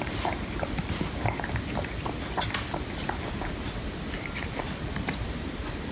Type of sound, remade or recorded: recorded